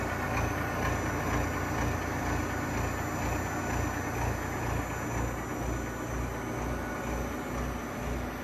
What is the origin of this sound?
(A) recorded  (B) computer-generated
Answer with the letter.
A